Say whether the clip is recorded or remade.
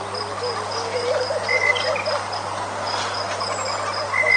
recorded